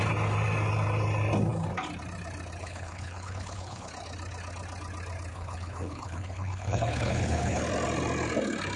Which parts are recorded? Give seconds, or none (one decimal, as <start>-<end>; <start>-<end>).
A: 0.0-2.6; 3.9-5.3; 7.6-8.8